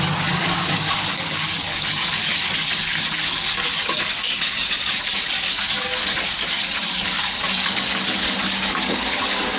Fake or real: fake